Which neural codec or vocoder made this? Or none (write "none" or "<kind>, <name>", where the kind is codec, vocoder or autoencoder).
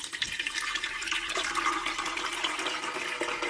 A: none